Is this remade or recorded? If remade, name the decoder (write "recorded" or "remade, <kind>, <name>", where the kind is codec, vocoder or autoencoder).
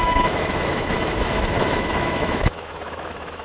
remade, autoencoder, DAC-VAE